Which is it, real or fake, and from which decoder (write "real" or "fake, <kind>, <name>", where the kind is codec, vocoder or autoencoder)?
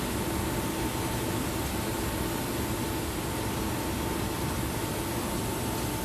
real